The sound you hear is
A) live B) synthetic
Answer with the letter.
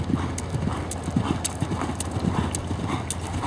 A